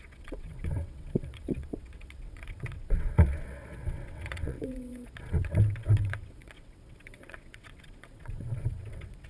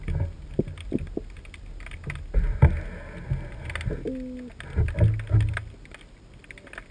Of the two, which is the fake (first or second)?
first